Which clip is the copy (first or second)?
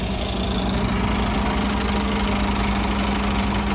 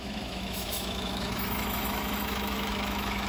second